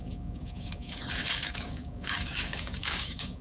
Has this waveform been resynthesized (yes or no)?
yes